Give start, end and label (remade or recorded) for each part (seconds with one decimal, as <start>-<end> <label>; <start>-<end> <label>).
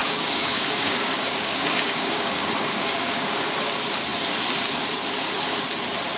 0.0-3.4 remade; 3.4-6.2 recorded